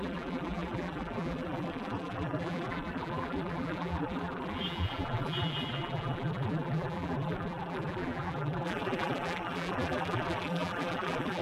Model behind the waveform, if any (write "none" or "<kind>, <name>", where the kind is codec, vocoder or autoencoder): vocoder, BigVGAN v2